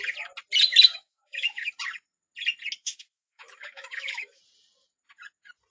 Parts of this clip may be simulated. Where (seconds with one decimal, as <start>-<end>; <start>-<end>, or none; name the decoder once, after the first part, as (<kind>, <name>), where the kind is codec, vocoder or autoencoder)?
0.9-1.7 (autoencoder, DAC-VAE); 2.8-4.4